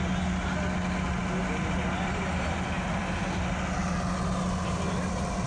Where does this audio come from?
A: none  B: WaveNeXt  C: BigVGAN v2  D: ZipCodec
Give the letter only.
A